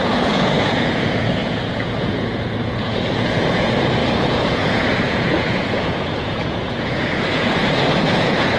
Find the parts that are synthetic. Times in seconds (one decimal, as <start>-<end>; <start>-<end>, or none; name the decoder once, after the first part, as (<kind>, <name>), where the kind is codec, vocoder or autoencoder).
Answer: 0.0-7.6 (vocoder, Vocos); 8.2-8.6